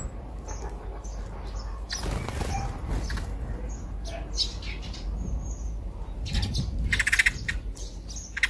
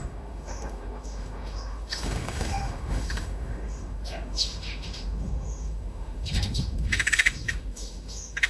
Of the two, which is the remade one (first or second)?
second